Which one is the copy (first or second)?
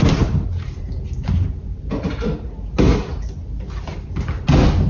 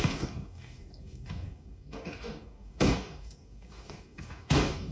second